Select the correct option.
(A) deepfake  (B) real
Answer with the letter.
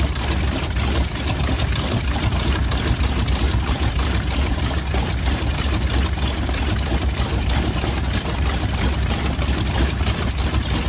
B